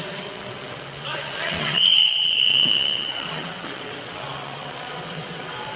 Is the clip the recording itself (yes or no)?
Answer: no